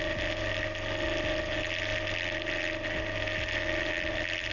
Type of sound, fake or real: real